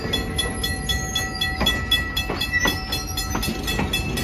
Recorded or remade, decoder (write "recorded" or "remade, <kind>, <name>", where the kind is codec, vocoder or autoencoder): recorded